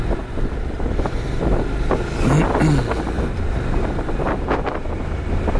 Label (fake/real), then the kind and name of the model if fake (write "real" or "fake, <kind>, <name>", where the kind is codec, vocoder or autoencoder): real